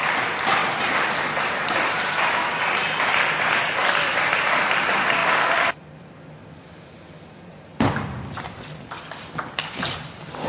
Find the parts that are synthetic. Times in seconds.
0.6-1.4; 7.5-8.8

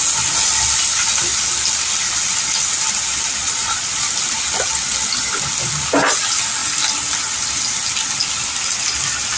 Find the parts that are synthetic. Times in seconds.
3.4-4.1

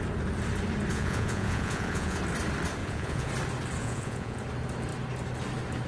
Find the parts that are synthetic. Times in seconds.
0.9-2.2; 2.8-3.3; 3.8-4.4

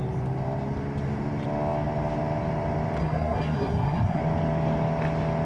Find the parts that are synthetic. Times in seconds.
3.0-4.2

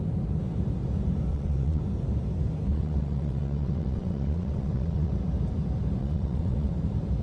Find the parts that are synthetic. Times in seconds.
1.3-1.8; 2.7-5.1; 6.0-6.7

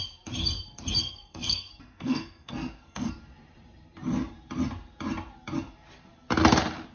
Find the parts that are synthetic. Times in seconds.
1.0-3.1

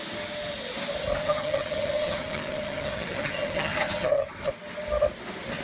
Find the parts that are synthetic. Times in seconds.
1.2-4.5

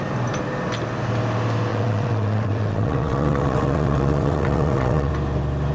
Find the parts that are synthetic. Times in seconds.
1.7-5.1